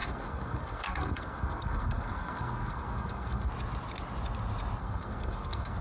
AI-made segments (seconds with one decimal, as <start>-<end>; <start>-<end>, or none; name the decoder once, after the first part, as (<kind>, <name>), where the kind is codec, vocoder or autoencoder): 0.0-3.5 (codec, SNAC); 4.8-5.8